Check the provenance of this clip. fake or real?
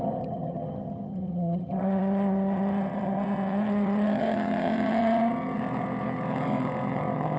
fake